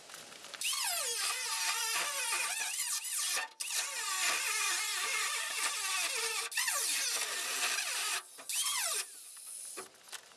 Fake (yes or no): no